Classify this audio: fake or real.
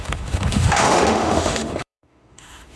fake